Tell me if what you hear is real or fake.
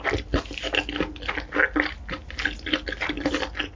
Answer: real